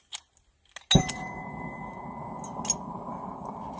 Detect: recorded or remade recorded